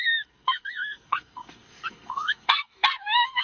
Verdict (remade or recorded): remade